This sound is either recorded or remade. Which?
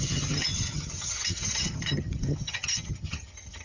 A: remade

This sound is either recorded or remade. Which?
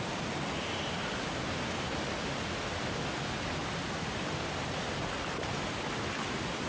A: recorded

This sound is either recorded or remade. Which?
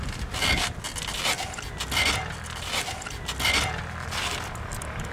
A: recorded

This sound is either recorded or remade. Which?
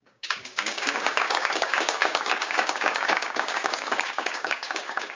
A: remade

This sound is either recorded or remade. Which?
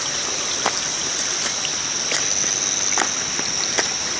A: recorded